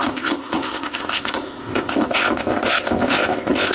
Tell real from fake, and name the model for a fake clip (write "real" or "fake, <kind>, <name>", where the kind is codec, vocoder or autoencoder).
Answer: fake, codec, ZipCodec